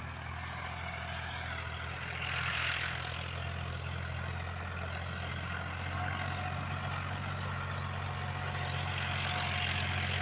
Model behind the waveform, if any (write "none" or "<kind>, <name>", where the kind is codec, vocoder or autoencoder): none